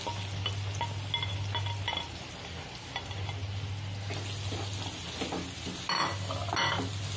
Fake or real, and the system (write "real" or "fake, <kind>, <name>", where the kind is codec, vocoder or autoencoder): real